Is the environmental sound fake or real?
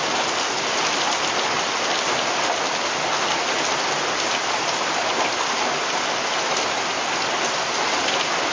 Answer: real